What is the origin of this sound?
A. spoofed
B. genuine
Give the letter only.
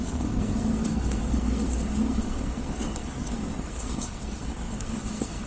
A